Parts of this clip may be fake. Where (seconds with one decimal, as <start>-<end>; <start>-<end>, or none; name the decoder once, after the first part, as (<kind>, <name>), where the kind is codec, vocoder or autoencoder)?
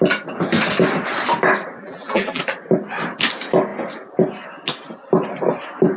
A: 1.8-2.4 (vocoder, BigVGAN v2)